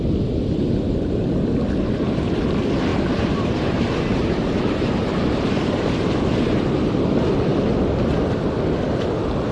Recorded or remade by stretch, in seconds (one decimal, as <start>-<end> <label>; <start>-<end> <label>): 0.0-2.9 recorded; 2.9-6.1 remade; 6.1-9.5 recorded